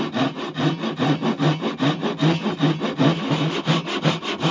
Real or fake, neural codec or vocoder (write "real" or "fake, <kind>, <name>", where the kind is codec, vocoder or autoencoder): real